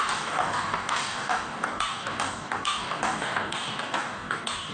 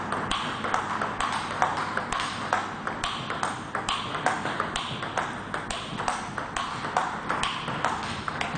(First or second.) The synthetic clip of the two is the first